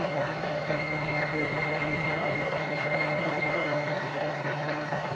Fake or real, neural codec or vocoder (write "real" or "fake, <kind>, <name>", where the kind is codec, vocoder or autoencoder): fake, codec, SNAC